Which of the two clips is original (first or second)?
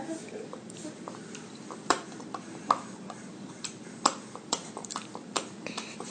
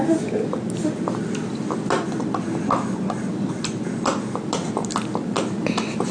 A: second